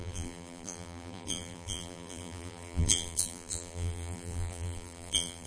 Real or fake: fake